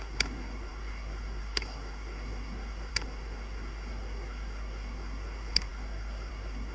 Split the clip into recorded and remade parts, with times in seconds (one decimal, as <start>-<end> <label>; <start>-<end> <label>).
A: 0.0-6.7 remade